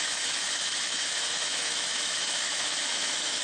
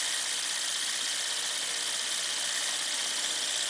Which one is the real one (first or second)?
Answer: second